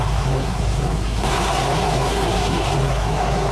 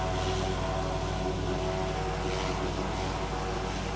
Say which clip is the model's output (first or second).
first